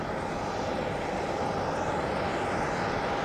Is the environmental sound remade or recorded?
recorded